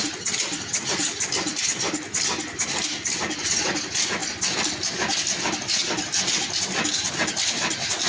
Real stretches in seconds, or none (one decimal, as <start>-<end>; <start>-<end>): 0.0-8.1